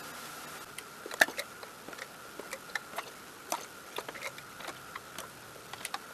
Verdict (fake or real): real